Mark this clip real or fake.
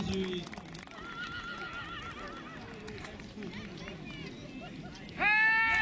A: real